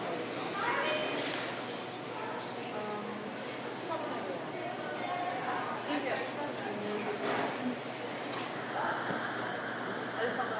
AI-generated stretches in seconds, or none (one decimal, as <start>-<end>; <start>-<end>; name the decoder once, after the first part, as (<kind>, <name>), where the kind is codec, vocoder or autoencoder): none